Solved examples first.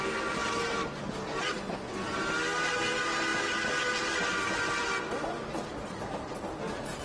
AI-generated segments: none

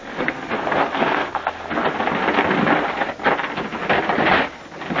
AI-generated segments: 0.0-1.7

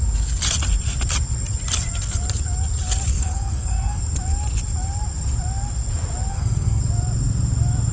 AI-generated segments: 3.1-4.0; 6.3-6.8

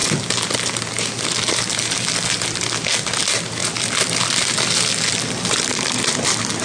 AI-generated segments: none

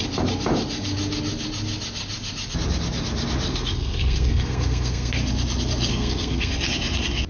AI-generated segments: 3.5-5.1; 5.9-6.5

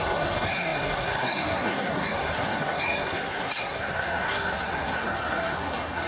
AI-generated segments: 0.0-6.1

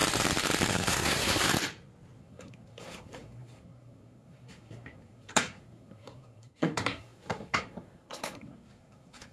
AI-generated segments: 0.7-1.5; 2.2-9.3